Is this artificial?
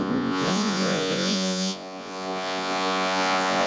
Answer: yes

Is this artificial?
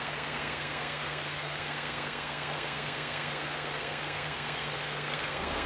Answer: yes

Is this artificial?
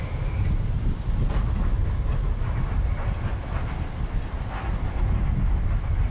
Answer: no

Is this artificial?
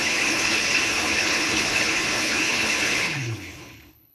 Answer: yes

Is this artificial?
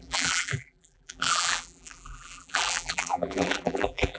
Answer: yes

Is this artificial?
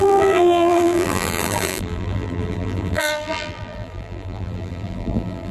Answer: yes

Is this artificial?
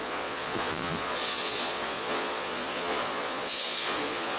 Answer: yes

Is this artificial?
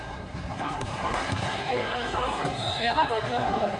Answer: yes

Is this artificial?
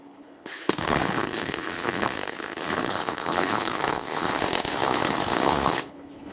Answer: yes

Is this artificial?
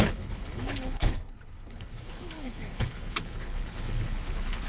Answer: yes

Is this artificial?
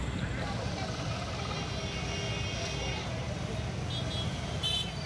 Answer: no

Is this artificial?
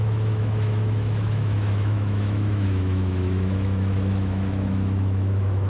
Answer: yes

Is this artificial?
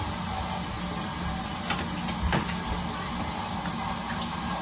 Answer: no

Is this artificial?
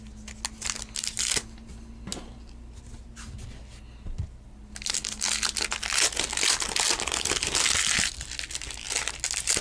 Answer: no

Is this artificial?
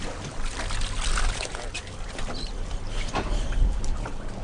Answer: no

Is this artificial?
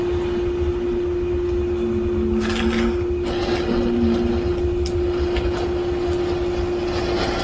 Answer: no